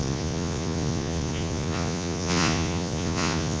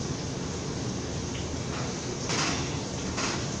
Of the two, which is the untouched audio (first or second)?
second